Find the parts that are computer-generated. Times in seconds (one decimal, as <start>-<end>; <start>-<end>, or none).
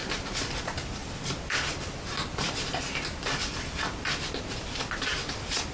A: 1.0-4.4